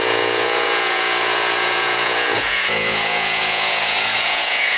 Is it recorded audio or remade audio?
remade